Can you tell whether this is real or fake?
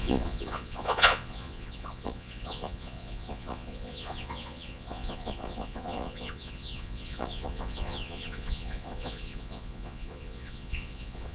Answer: fake